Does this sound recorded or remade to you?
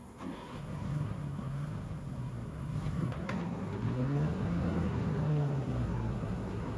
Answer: remade